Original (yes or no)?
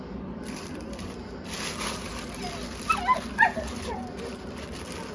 yes